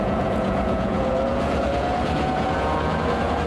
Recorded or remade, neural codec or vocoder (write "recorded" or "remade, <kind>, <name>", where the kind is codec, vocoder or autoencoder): remade, vocoder, Vocos